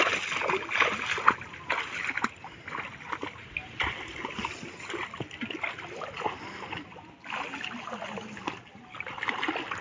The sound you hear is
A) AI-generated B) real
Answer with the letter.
B